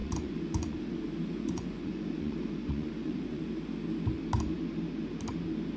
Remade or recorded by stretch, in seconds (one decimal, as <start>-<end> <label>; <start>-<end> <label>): 0.0-3.5 remade; 3.5-5.8 recorded